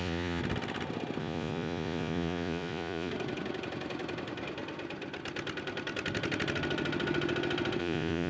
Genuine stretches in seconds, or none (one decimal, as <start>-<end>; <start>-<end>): 0.4-1.2; 3.1-7.8